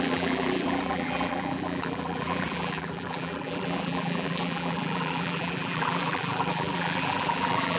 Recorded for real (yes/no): no